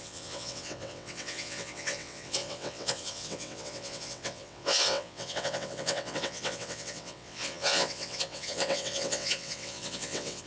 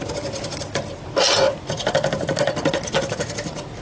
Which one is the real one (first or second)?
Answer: second